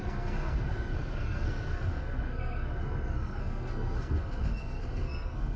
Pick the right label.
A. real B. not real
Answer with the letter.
B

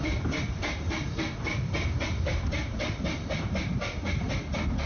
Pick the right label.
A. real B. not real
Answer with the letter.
A